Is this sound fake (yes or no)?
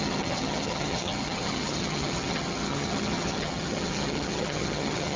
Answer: yes